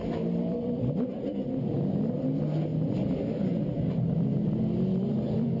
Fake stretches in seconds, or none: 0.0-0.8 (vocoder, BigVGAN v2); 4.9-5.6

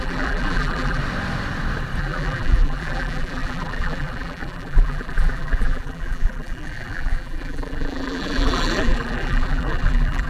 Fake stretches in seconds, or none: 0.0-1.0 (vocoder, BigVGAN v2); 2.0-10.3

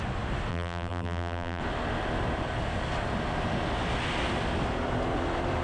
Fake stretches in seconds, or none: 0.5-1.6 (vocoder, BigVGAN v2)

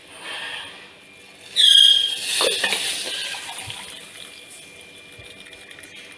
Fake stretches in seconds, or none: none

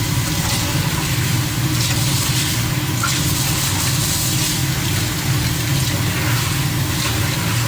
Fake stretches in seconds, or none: none